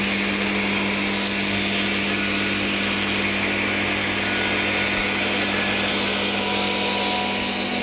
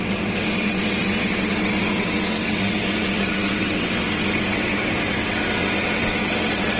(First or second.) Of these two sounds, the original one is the first